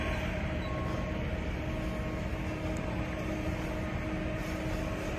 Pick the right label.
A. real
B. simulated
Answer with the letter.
A